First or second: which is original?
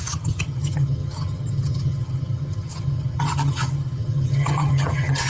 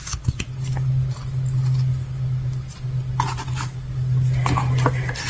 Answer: second